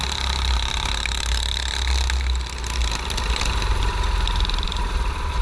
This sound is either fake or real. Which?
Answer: real